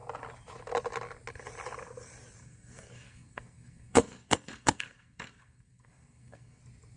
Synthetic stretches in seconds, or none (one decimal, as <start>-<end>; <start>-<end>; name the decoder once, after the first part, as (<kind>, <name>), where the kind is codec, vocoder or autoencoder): 2.4-6.6 (codec, SNAC)